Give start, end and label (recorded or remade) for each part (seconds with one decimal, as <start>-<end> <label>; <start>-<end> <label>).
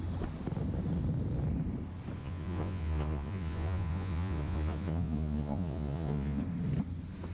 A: 0.0-2.2 recorded; 2.2-6.4 remade; 6.4-7.3 recorded